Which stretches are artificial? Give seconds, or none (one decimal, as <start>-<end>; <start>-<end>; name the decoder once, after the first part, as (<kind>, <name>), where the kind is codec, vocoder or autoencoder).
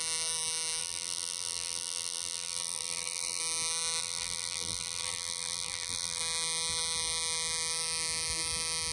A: 0.8-3.4 (vocoder, BigVGAN v2); 4.0-6.2